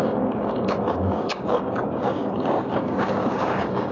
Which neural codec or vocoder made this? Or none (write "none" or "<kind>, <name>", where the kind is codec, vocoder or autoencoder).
codec, DAC